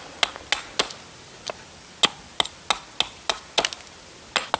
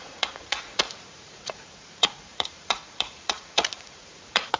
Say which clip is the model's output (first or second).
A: second